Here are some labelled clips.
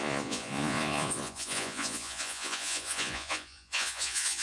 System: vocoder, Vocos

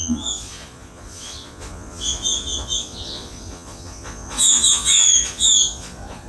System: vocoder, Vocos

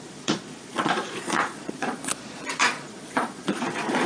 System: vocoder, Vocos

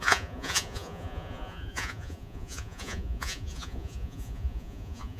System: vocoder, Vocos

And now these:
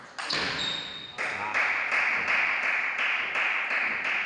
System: none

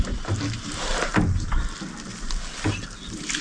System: none